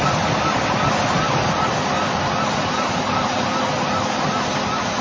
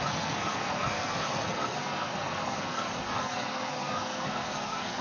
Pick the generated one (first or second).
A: second